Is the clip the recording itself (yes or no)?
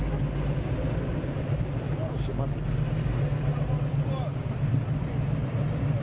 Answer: yes